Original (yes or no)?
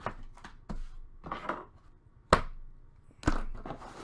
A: yes